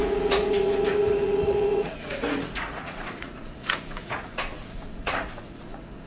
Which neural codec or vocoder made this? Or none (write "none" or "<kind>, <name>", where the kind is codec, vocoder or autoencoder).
vocoder, Vocos